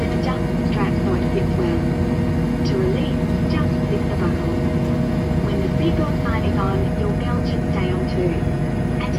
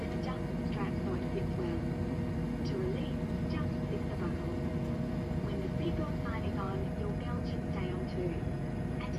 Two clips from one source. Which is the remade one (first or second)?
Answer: second